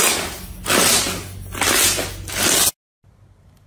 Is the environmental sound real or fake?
real